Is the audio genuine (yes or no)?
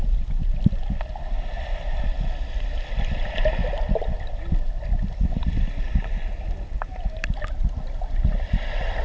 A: yes